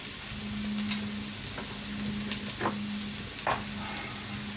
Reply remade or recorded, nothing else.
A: recorded